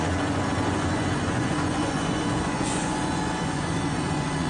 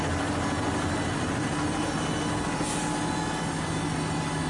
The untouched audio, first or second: second